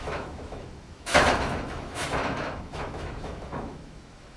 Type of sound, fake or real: fake